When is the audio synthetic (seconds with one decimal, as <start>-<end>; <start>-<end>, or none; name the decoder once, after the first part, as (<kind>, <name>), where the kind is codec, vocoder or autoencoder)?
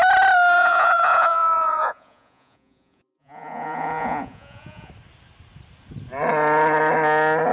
0.6-4.9 (vocoder, Vocos)